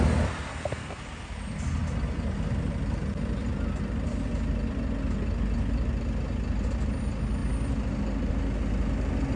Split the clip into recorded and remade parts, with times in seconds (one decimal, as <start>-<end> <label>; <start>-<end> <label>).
0.0-0.5 recorded; 0.5-1.0 remade; 1.0-9.4 recorded